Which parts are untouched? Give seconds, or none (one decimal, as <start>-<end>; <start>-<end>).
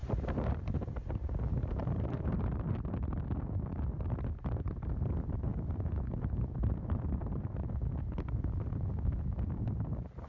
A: 2.7-5.5; 7.7-10.3